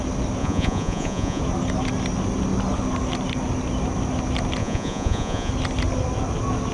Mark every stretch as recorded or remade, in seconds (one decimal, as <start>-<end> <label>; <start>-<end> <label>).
0.0-0.4 recorded; 0.4-1.4 remade; 1.4-4.6 recorded; 4.6-5.5 remade; 5.5-6.7 recorded